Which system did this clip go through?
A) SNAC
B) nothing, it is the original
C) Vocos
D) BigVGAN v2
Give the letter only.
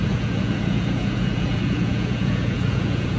C